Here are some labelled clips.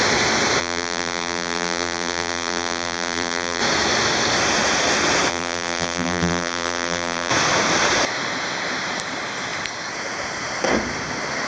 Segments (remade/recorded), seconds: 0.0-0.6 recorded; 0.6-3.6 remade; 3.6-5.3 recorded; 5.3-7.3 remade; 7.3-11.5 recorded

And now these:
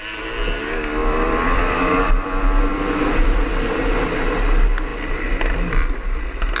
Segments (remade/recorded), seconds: 0.0-1.0 recorded; 1.0-1.6 remade; 1.6-2.7 recorded; 2.7-3.5 remade; 3.5-4.9 recorded; 4.9-5.9 remade; 5.9-6.6 recorded